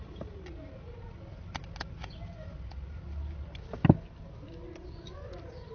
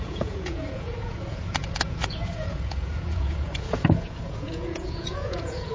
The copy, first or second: second